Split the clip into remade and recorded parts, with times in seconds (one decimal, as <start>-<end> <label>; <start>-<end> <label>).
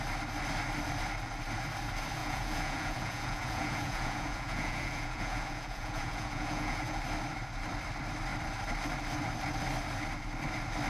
0.0-2.2 recorded; 2.2-7.0 remade; 7.0-10.9 recorded